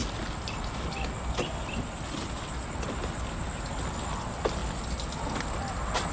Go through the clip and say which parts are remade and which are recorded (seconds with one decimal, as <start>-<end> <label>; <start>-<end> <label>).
0.0-6.1 recorded